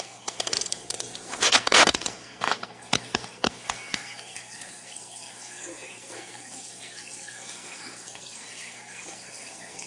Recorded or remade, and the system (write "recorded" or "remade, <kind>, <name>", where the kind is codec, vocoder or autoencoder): remade, codec, SNAC